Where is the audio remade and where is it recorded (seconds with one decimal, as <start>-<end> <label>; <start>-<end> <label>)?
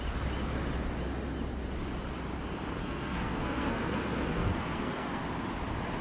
0.0-2.8 recorded; 2.8-5.2 remade; 5.2-6.0 recorded